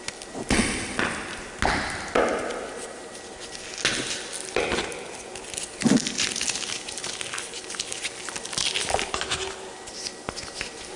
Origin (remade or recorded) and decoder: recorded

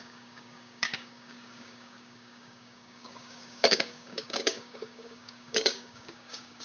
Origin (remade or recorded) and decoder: remade, codec, DAC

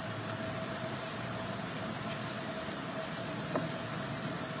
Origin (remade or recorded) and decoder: recorded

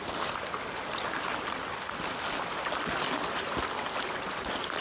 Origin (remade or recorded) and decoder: recorded